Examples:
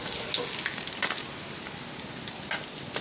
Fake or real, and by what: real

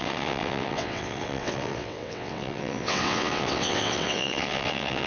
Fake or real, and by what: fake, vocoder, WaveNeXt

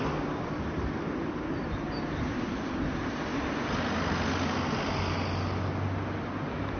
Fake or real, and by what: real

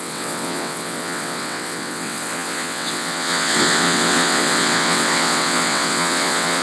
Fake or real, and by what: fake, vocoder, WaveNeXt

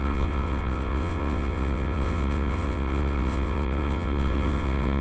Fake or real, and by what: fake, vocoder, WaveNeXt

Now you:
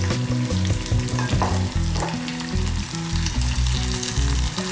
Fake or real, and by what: real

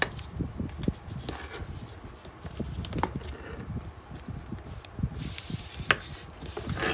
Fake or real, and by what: real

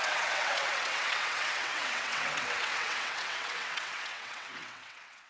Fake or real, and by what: fake, vocoder, WaveNeXt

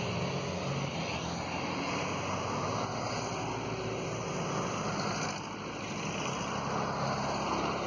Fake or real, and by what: real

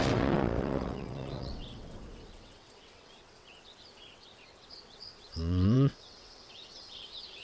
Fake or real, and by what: fake, vocoder, WaveNeXt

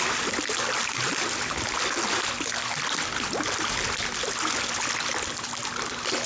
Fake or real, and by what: real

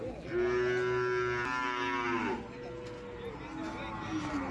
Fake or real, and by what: real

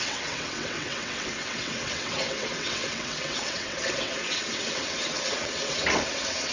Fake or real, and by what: fake, vocoder, WaveNeXt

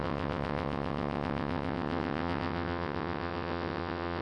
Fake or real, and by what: fake, vocoder, WaveNeXt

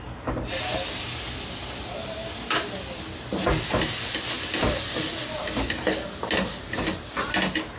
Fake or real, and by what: real